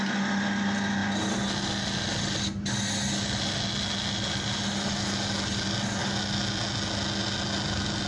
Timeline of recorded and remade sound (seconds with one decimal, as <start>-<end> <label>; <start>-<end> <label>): 0.0-8.1 recorded